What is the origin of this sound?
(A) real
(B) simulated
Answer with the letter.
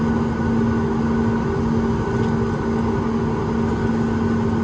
A